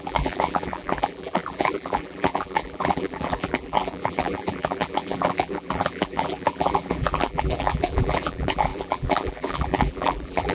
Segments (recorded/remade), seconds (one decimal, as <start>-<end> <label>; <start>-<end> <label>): 0.0-10.5 remade